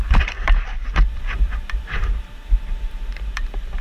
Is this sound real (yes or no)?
no